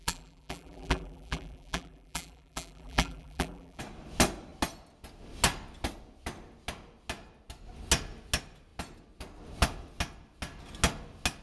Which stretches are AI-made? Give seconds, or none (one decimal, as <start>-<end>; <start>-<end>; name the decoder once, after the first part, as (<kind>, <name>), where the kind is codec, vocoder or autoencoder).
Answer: 0.0-3.8 (vocoder, BigVGAN v2)